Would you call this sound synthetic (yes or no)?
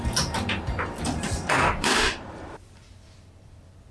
yes